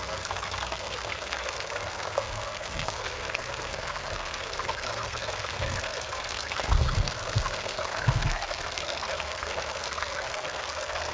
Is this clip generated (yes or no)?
yes